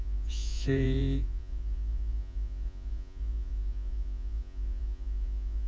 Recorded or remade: remade